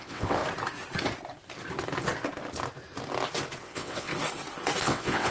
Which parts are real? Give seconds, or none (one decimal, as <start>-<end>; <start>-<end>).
0.4-3.6; 4.1-4.8